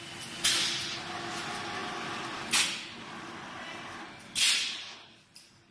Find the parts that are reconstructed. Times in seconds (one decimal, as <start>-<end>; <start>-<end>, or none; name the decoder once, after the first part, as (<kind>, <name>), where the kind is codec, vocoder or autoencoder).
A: none